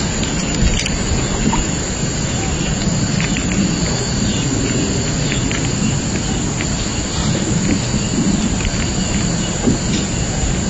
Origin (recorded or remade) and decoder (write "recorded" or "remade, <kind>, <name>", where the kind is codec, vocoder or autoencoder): recorded